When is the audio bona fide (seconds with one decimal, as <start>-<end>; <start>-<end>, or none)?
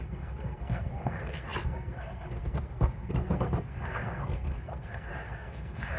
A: none